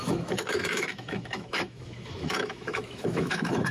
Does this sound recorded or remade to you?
remade